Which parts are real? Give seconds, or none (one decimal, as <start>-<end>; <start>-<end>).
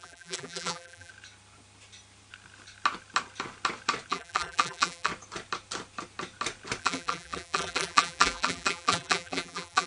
1.1-4.1; 5.1-6.8